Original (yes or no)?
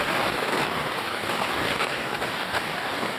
no